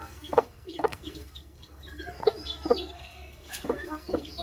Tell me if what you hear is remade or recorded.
remade